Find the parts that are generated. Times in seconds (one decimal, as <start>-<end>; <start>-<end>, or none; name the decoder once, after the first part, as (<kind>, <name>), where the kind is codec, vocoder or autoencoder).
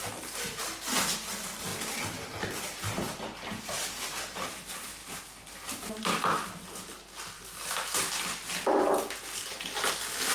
none